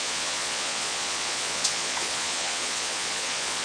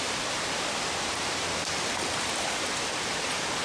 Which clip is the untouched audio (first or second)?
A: second